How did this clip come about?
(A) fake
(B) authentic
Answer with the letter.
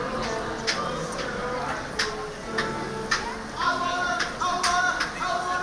B